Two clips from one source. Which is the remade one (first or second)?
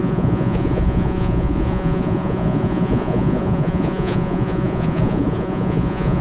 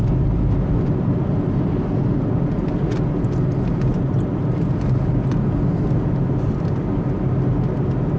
first